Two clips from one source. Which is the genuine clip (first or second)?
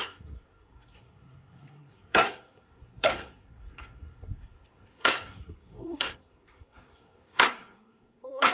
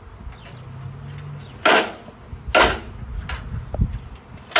second